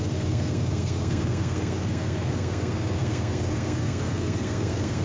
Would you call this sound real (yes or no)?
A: no